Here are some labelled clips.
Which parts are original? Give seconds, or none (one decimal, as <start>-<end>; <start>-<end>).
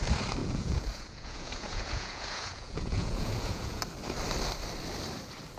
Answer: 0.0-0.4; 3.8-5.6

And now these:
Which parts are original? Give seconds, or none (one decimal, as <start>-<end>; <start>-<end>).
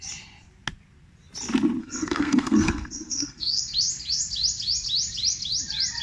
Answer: 0.0-1.8; 3.6-6.0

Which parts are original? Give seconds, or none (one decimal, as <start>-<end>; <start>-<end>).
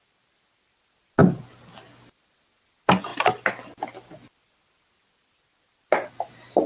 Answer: 0.0-6.7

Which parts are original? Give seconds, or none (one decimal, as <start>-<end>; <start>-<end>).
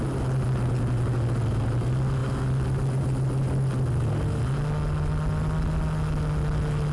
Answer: 0.0-6.9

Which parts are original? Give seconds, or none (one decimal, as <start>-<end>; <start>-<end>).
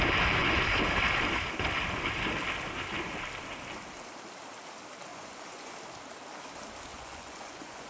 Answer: 0.0-5.1; 5.7-6.9